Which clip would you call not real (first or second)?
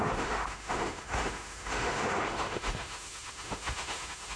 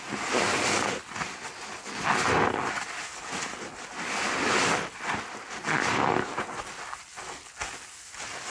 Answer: first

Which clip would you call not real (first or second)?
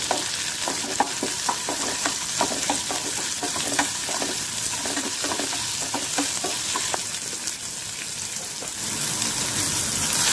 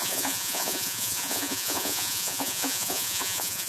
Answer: second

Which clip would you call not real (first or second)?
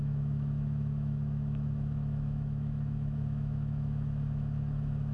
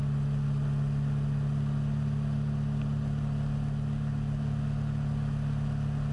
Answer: first